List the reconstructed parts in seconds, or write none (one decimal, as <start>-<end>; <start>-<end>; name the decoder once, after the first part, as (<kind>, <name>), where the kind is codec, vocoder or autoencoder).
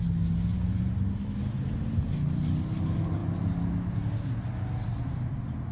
0.5-1.4 (vocoder, BigVGAN v2)